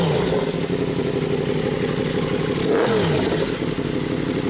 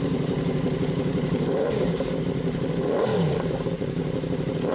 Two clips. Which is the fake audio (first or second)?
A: second